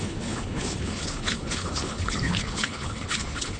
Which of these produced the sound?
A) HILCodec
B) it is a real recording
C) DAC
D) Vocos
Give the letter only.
A